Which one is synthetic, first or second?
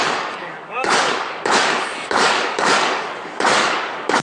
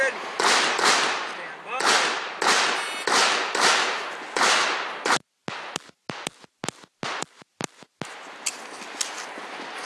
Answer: first